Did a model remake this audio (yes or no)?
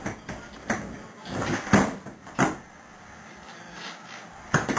no